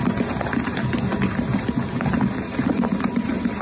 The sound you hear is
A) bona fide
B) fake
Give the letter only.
A